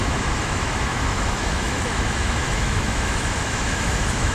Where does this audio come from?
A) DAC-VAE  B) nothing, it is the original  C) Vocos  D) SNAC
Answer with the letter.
A